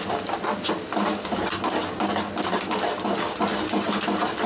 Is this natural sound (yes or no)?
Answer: yes